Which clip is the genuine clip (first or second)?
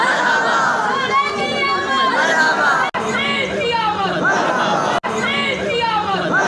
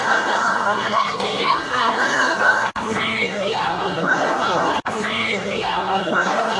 first